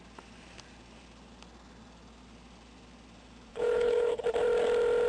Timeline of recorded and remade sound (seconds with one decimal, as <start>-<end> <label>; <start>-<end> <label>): 0.0-3.5 recorded; 3.5-4.2 remade; 4.2-5.1 recorded